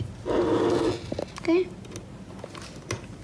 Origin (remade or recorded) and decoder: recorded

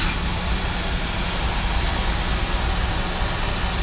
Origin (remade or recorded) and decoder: recorded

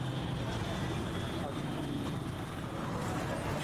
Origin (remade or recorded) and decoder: recorded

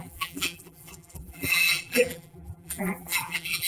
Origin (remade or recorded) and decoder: remade, vocoder, BigVGAN v2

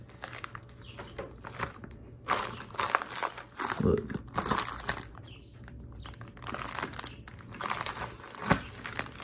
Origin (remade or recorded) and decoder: recorded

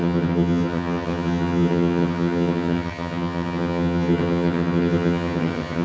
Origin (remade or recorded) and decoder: remade, vocoder, HiFi-GAN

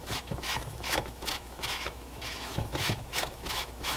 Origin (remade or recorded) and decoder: remade, autoencoder, DAC-VAE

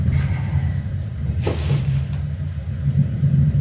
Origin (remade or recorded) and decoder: remade, vocoder, BigVGAN v2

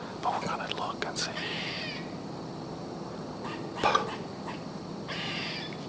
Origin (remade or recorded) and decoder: recorded